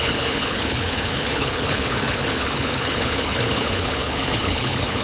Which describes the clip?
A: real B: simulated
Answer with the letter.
B